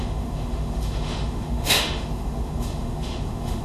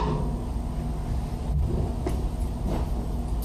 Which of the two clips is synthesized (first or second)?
first